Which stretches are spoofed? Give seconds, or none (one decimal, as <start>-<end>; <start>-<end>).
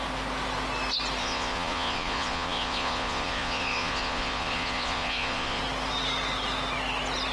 1.2-5.6